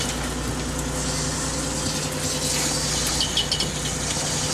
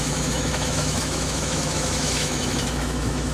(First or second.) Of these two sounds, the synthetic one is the second